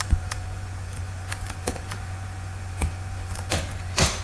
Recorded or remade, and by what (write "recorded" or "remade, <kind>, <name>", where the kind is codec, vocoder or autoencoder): remade, vocoder, Vocos